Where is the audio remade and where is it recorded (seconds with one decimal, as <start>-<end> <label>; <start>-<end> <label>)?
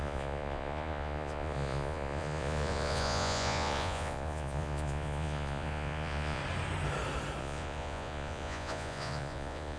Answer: 0.0-6.4 remade; 6.4-7.4 recorded; 7.4-9.8 remade